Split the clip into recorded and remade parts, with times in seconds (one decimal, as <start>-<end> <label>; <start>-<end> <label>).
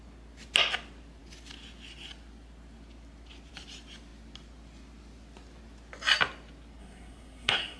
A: 0.0-6.8 recorded; 6.8-7.8 remade